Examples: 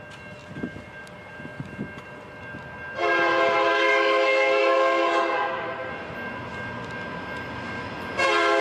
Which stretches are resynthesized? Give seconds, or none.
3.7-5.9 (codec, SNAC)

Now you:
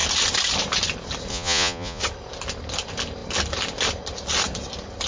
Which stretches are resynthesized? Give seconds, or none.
1.3-2.0 (vocoder, Vocos)